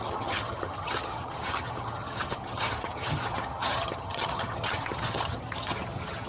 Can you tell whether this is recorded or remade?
remade